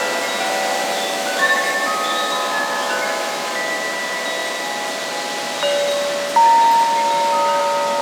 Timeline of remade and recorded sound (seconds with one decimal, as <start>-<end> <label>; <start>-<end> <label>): 0.0-0.8 recorded; 0.8-3.5 remade; 3.5-8.0 recorded